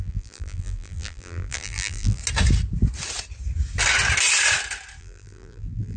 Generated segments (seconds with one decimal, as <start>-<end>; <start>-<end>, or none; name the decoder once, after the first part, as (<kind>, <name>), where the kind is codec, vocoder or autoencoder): 0.0-2.2 (vocoder, BigVGAN v2); 5.0-6.0